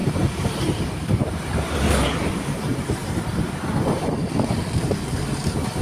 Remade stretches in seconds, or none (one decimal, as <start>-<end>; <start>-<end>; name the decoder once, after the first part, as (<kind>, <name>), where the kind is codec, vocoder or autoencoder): none